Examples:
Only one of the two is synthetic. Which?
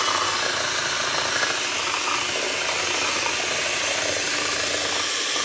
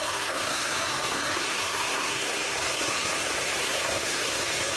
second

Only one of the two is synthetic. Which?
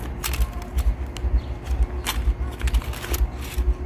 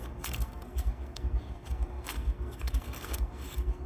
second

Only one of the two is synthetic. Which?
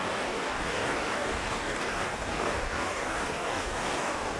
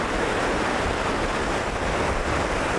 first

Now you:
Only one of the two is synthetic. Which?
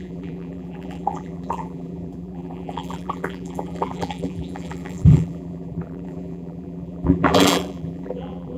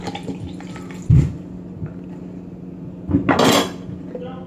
first